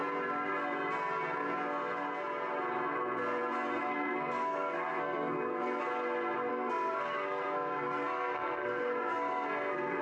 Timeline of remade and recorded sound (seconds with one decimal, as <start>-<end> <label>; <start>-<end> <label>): 0.0-3.8 recorded; 3.8-5.8 remade; 5.8-6.5 recorded; 6.5-10.0 remade

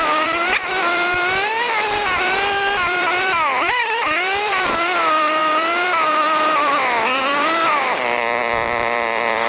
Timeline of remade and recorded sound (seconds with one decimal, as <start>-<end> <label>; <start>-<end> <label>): 0.0-9.5 remade

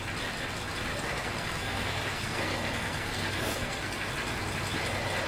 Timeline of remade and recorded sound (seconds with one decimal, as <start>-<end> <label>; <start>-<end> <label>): 0.0-0.9 recorded; 0.9-4.1 remade; 4.1-5.3 recorded